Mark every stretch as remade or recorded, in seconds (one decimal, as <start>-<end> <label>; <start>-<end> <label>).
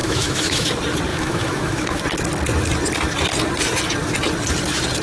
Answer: 0.0-0.7 remade; 0.7-1.1 recorded; 1.1-2.0 remade; 2.0-5.0 recorded